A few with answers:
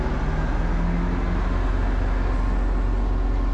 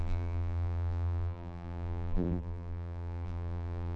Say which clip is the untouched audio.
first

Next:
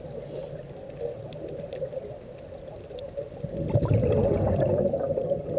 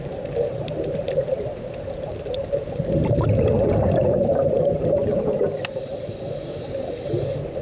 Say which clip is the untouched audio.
first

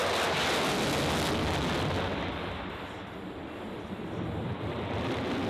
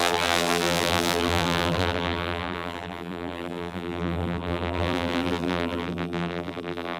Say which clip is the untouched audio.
first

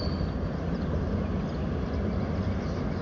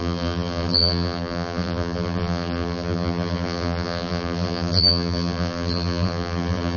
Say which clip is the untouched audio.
first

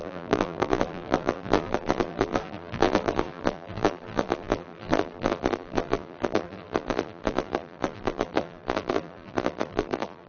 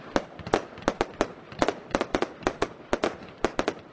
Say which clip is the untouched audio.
second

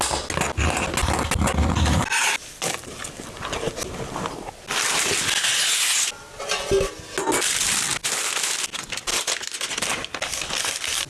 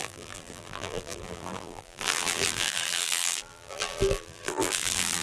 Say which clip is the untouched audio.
first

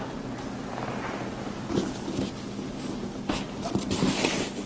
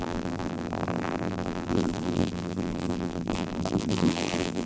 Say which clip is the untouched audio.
first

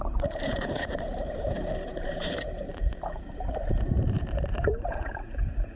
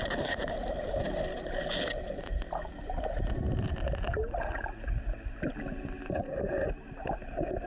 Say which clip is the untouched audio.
second